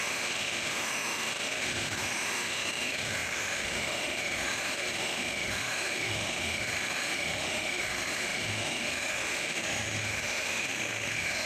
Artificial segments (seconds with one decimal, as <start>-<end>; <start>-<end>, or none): 0.0-11.5